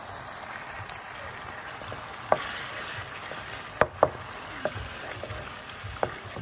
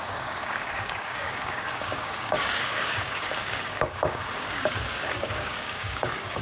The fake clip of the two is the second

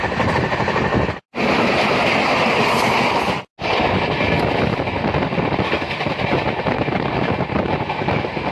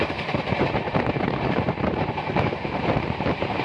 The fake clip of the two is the second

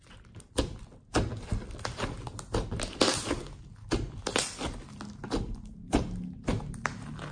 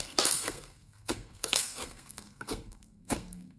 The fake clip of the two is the second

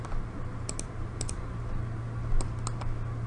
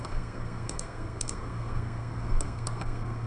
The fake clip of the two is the second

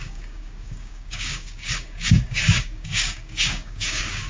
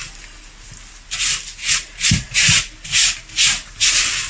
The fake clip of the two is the first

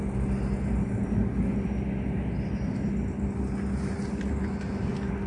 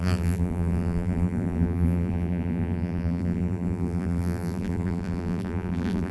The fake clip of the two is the second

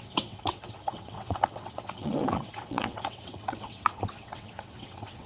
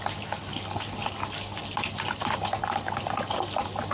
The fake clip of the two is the first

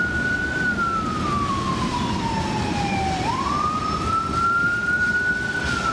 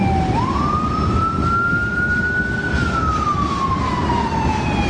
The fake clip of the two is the first